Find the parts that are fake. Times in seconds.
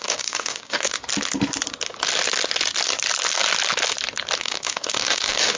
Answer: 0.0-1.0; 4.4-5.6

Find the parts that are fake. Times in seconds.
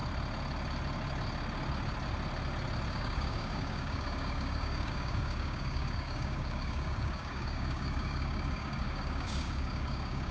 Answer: 2.9-10.3